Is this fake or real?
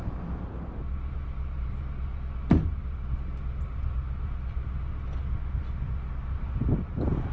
real